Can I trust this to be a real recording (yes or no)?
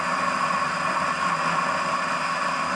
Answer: yes